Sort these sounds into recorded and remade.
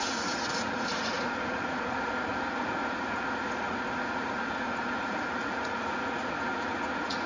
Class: remade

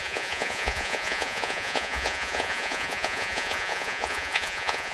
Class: remade